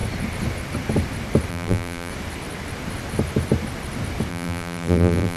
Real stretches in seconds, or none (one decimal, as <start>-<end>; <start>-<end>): 0.0-1.5; 2.1-4.3